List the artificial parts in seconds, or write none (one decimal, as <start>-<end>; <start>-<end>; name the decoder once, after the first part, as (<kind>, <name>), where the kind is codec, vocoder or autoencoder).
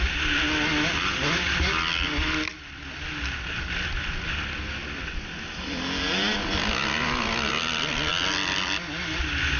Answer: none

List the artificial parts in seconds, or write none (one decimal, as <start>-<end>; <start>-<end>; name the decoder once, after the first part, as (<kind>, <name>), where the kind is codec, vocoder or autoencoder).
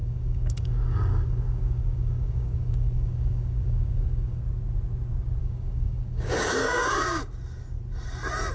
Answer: 0.0-4.4 (codec, DAC); 5.4-7.2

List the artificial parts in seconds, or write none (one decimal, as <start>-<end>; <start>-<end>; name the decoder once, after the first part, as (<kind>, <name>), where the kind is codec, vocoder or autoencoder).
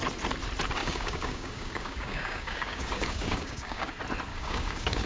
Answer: 0.8-3.9 (codec, DAC); 4.3-5.1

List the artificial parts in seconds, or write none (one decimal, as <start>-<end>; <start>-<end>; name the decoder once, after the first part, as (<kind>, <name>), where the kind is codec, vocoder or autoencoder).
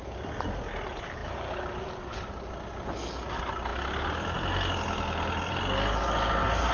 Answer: none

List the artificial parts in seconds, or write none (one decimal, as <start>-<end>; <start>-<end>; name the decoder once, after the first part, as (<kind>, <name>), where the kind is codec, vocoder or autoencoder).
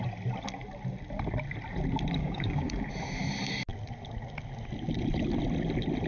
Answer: 2.2-2.9 (codec, DAC)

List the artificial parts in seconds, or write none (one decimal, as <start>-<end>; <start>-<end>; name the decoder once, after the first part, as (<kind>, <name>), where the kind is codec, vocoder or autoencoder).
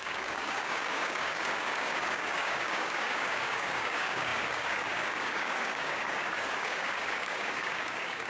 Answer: 0.0-8.3 (codec, DAC)